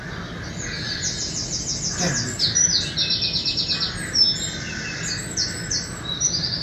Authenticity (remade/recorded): recorded